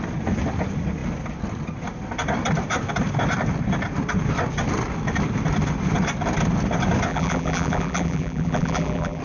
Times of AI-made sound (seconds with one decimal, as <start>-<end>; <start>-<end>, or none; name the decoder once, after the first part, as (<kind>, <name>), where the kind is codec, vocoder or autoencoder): 7.1-9.2 (vocoder, BigVGAN v2)

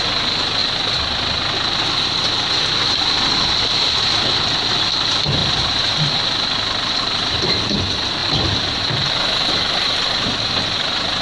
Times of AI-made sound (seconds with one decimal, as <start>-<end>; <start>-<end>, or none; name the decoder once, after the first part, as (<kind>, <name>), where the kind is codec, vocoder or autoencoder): 5.4-5.9 (vocoder, BigVGAN v2)

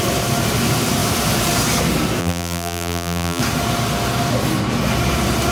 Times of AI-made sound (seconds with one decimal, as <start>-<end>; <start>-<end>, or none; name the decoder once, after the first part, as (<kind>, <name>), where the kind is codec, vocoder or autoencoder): 2.2-3.4 (vocoder, BigVGAN v2)

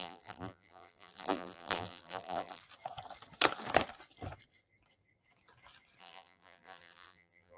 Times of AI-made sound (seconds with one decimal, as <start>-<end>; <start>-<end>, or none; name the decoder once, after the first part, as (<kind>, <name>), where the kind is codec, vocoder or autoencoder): 0.0-2.6 (vocoder, BigVGAN v2); 6.0-7.6

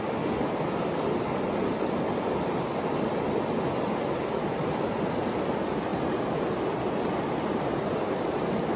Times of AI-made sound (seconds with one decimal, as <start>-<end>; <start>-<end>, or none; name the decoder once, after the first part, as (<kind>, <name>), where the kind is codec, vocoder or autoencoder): 5.9-6.6 (vocoder, BigVGAN v2)